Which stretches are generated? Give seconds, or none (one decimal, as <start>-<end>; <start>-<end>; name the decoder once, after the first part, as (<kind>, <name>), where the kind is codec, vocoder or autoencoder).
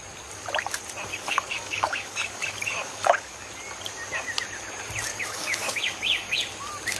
1.1-3.5 (codec, DAC); 5.1-6.5